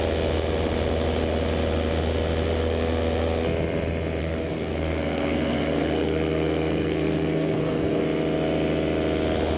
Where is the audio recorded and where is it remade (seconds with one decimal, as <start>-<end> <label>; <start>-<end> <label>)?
0.0-4.2 recorded; 4.2-8.0 remade; 8.0-9.6 recorded